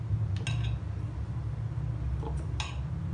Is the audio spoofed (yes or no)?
no